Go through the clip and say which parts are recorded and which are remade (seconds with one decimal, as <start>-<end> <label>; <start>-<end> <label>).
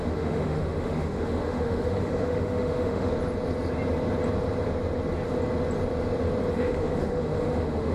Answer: 0.0-3.1 remade; 3.1-6.5 recorded; 6.5-7.9 remade